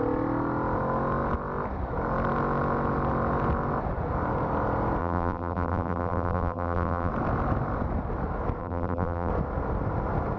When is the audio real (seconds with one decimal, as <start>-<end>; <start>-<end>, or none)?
0.0-5.0; 7.1-8.6; 9.3-10.4